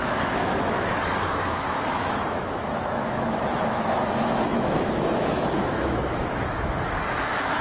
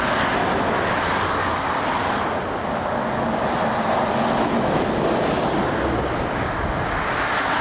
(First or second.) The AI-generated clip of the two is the first